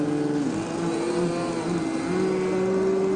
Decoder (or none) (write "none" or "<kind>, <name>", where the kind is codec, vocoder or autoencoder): none